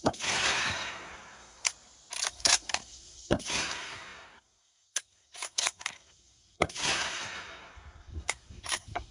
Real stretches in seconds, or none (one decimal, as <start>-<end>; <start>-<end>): 1.7-2.3